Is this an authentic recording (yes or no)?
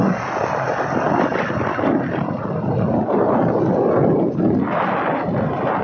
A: yes